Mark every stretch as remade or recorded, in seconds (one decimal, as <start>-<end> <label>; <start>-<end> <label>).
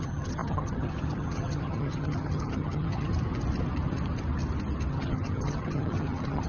0.0-3.1 remade; 3.1-4.9 recorded; 4.9-6.5 remade